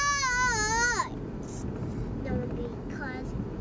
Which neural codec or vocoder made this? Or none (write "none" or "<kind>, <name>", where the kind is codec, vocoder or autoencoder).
none